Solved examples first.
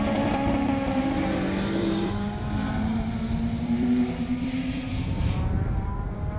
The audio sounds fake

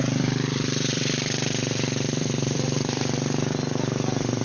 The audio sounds fake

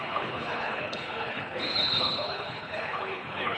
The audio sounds fake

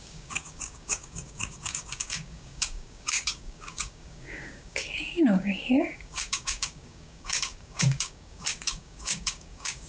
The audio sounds fake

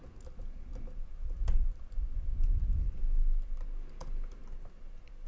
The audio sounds real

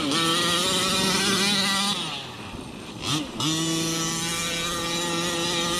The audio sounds real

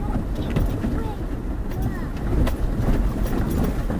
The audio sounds real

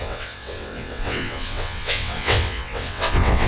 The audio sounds fake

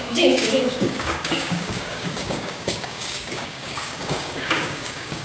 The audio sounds fake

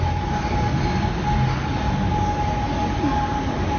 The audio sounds real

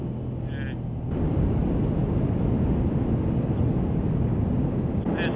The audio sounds real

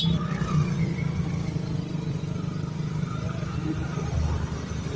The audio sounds real